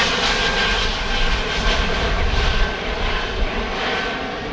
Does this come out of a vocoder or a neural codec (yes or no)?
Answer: no